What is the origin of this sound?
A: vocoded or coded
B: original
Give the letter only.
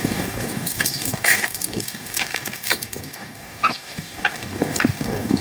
A